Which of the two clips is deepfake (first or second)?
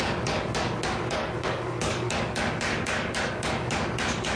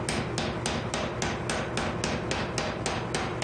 first